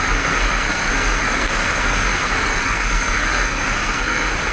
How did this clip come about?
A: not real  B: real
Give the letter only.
A